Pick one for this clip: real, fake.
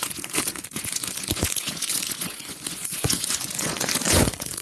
fake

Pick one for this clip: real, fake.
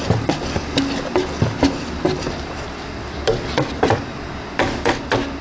real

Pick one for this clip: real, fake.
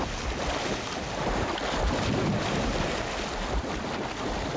real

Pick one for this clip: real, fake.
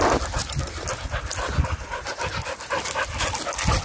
real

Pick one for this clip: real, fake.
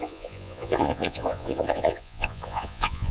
fake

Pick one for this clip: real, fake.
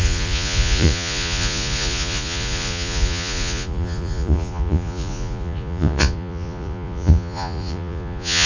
fake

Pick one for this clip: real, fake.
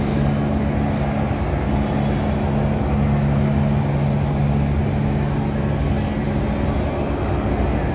real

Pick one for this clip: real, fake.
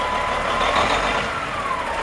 real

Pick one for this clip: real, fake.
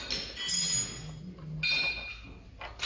real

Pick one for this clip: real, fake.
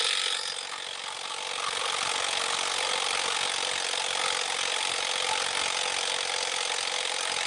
real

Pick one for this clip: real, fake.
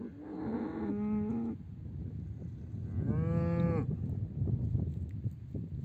real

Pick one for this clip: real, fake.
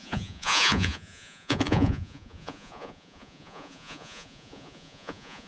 fake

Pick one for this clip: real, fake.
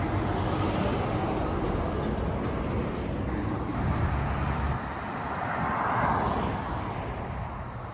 real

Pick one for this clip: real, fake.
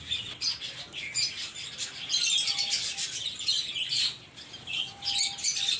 real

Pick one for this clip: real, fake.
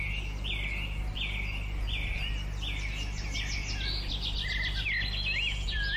real